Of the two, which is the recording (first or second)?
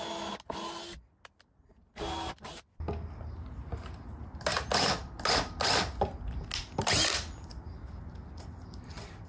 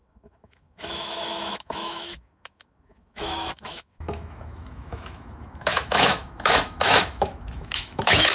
first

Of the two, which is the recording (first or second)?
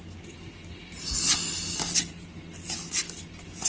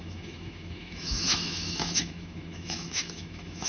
first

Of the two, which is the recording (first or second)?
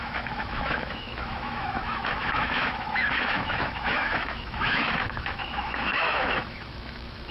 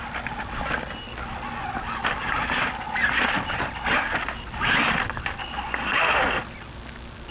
second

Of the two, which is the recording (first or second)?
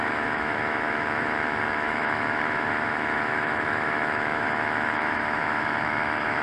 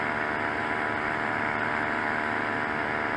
second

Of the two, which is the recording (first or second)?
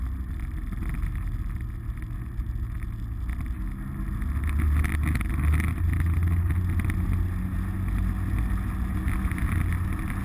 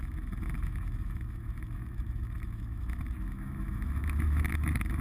first